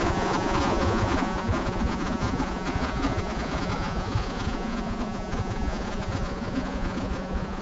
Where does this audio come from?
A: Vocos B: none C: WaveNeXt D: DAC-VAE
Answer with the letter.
A